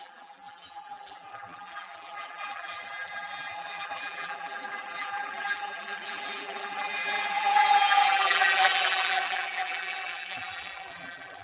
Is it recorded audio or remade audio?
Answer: remade